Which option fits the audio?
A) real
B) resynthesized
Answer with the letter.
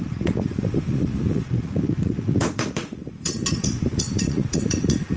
B